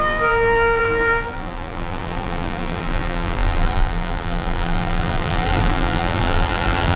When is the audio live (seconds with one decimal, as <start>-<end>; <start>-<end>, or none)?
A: none